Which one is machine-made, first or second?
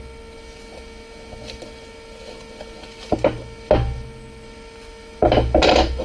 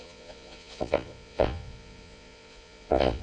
second